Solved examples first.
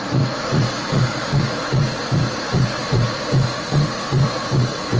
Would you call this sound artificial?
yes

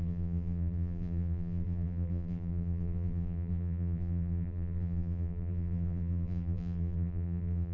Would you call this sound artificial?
yes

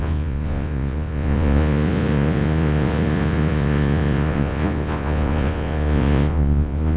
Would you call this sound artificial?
yes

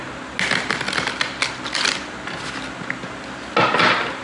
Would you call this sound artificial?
no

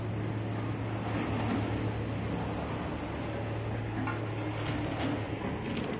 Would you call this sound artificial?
no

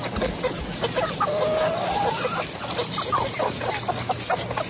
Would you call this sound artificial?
no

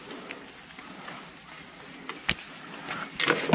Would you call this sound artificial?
no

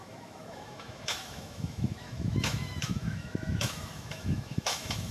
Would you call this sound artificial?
yes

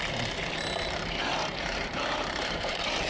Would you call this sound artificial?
no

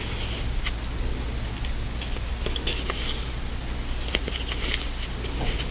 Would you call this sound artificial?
no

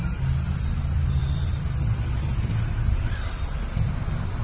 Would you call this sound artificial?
yes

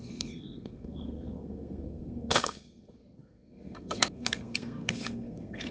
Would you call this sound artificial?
yes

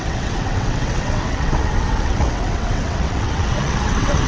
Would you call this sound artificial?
yes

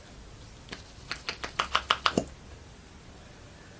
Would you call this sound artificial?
no